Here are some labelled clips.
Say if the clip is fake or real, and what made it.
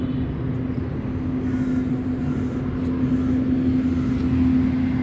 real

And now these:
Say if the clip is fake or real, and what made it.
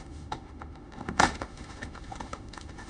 fake, autoencoder, DAC-VAE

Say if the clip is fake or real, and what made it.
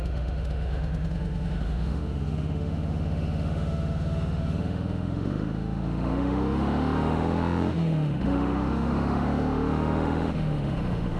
fake, autoencoder, DAC-VAE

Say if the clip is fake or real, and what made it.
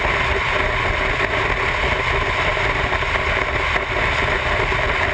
real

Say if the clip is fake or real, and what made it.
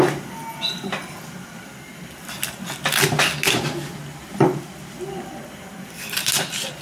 real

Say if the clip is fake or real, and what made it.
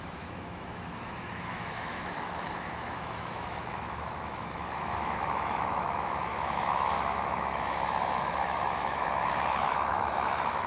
fake, autoencoder, DAC-VAE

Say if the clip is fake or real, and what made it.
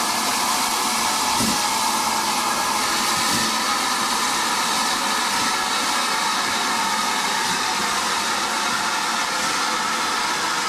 real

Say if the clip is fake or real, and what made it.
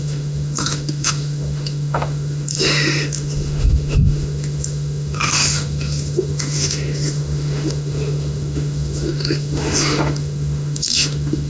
fake, autoencoder, DAC-VAE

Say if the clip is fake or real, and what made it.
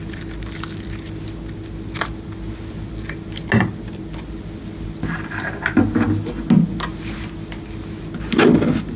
real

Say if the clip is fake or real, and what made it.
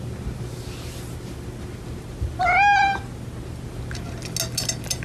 real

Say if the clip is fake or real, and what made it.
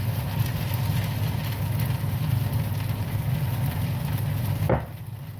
real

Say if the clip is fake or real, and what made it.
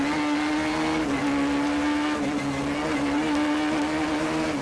real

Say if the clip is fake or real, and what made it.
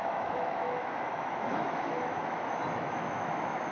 fake, autoencoder, DAC-VAE